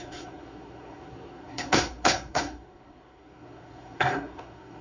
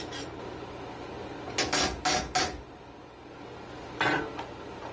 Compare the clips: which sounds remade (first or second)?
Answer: first